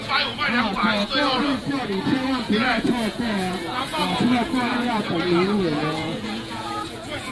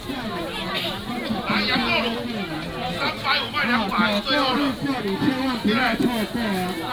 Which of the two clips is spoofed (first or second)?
first